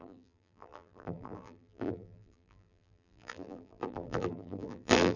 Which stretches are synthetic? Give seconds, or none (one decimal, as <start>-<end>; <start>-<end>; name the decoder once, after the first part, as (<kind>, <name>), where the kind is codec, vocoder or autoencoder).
0.0-5.2 (vocoder, BigVGAN v2)